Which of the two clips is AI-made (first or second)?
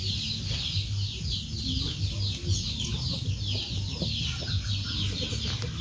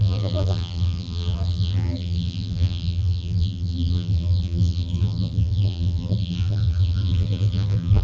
second